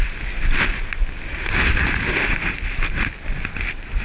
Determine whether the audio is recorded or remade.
recorded